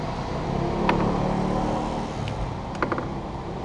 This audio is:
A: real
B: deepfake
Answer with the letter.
A